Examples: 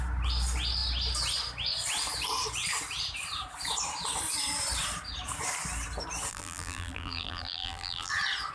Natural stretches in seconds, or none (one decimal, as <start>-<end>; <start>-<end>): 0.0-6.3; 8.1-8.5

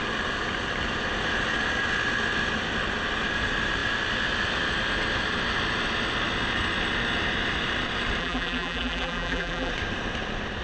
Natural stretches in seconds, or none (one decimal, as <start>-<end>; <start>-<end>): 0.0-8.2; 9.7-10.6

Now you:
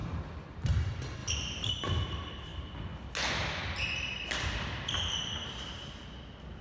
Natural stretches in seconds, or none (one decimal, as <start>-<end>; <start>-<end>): 0.5-1.2; 1.7-6.6

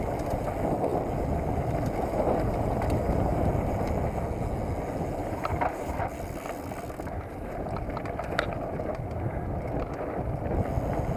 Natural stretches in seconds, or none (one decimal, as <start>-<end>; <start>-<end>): 0.0-5.2; 6.0-11.2

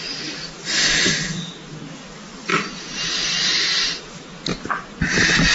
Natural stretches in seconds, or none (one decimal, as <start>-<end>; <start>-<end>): 0.0-5.5

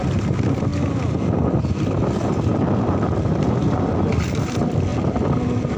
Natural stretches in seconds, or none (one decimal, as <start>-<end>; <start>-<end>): 0.7-1.6; 2.5-3.4; 4.9-5.8